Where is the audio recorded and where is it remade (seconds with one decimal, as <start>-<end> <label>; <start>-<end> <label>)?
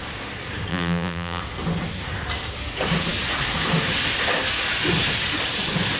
0.0-0.7 recorded; 0.7-1.4 remade; 1.4-6.0 recorded